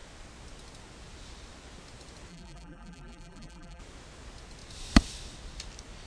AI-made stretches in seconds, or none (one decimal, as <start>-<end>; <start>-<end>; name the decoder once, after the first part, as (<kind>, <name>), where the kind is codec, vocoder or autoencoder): 2.3-3.8 (vocoder, BigVGAN v2)